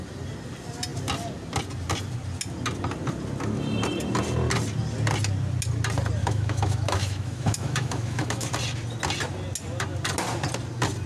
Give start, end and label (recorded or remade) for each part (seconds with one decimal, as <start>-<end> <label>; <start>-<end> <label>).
0.0-6.2 recorded; 6.2-8.5 remade; 8.5-11.1 recorded